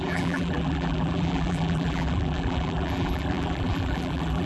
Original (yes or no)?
no